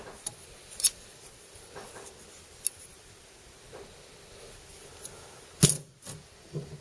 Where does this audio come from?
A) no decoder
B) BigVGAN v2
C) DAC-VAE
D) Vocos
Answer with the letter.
A